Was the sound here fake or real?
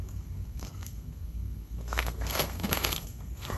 fake